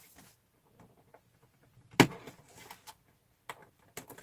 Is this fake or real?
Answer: real